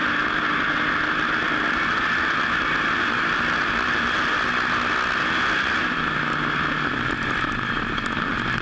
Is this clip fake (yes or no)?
no